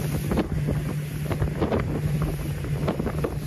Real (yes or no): yes